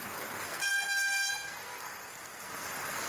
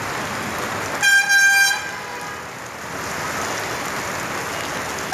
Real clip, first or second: second